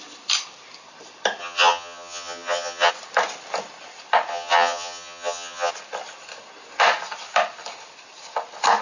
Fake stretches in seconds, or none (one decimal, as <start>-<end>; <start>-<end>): 1.4-2.9; 4.3-5.7

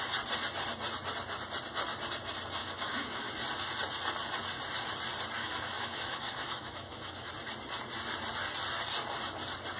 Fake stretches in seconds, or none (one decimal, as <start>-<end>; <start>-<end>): 2.6-3.3; 5.4-7.3

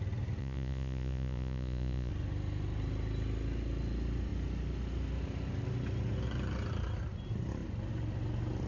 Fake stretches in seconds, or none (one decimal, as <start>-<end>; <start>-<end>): 0.4-2.1

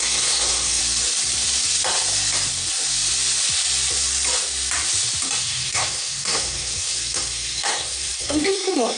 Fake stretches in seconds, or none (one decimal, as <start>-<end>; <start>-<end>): 0.0-0.8; 5.4-9.0

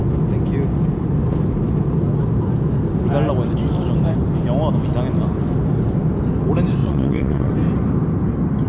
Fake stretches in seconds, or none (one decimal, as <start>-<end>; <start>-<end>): 6.8-7.5

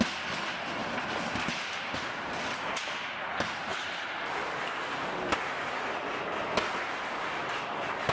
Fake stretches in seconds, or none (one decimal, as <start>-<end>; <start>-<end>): 0.8-3.2

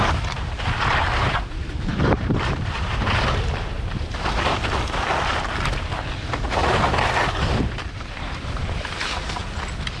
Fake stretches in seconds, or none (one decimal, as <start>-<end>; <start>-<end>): 0.0-4.6; 7.3-9.4